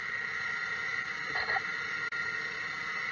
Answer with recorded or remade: recorded